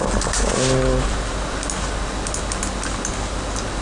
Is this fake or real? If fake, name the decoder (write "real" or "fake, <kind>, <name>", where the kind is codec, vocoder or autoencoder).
real